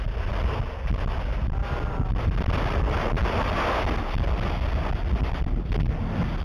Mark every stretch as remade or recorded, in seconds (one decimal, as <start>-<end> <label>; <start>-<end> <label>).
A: 0.0-6.4 recorded